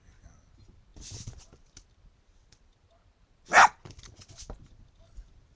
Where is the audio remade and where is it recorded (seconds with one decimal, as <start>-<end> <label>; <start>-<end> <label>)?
0.0-5.6 recorded